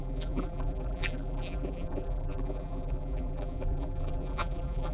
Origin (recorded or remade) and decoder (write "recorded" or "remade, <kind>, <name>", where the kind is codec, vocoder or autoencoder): remade, vocoder, BigVGAN v2